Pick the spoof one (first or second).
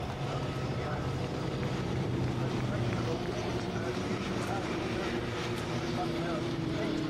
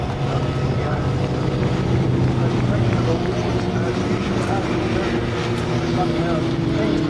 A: first